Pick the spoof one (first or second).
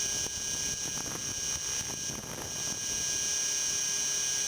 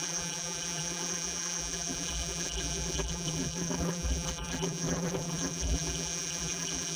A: second